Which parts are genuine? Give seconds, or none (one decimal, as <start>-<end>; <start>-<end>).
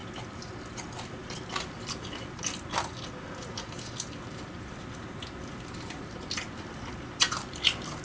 0.0-3.4